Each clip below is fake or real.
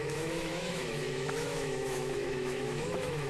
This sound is fake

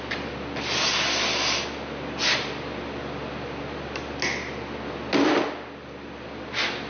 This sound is real